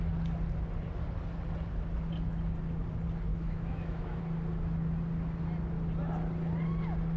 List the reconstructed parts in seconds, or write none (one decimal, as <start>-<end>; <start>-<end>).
3.3-4.2